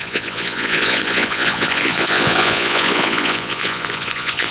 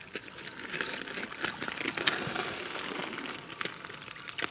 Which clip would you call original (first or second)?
second